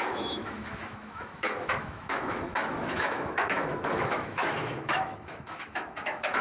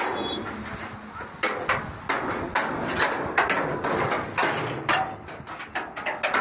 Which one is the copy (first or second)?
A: first